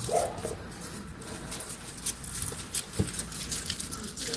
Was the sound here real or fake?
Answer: real